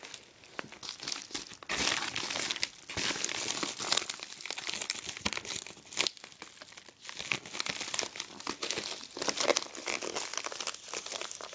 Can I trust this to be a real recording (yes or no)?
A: yes